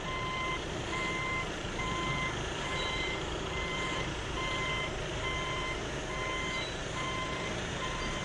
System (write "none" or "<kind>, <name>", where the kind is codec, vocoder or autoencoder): vocoder, BigVGAN v2